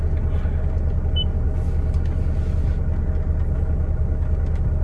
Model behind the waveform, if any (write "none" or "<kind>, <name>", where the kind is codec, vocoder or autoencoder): none